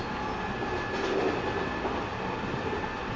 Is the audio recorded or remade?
recorded